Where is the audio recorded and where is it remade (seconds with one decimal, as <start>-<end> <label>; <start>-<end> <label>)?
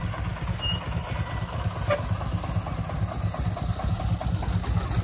0.0-5.0 recorded